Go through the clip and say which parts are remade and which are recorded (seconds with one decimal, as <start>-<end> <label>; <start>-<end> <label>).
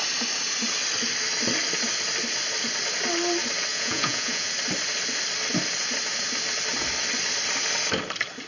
0.0-3.7 recorded; 3.7-4.5 remade; 4.5-8.5 recorded